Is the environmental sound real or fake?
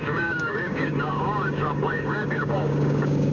fake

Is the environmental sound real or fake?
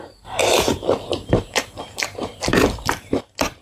fake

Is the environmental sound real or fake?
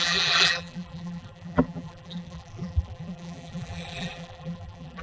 fake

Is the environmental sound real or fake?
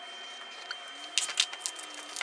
real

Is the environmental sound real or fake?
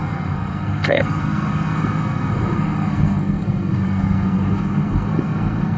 fake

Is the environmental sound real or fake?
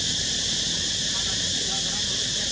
real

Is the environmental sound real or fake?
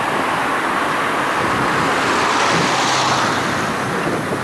real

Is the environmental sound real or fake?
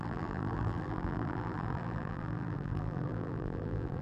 fake